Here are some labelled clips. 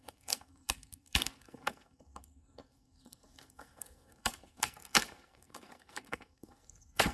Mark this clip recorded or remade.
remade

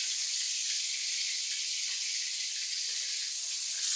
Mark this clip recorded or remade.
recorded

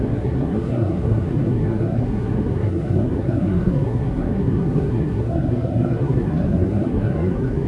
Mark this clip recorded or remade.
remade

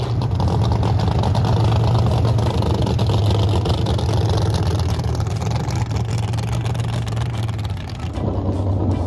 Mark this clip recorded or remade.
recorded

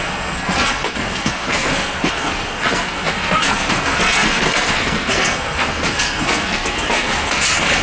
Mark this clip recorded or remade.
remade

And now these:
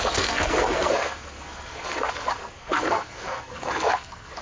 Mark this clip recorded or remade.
remade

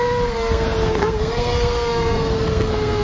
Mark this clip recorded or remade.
remade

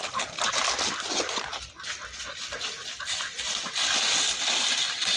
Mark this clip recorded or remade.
recorded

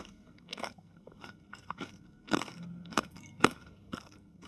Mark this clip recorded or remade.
remade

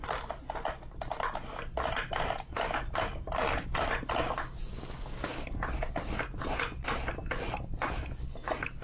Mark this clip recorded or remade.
recorded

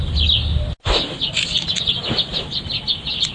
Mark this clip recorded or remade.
recorded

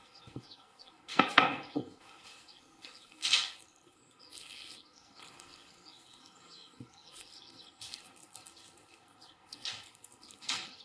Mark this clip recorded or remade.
remade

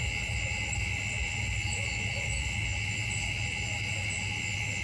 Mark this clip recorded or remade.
recorded